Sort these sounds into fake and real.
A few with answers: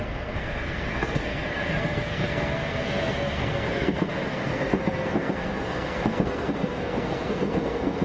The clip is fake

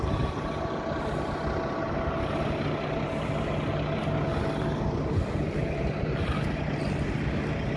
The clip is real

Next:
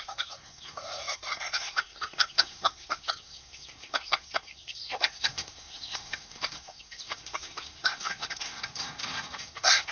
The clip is fake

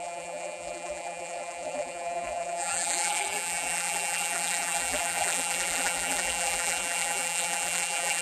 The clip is fake